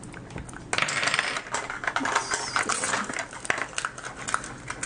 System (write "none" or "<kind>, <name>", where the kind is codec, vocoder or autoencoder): none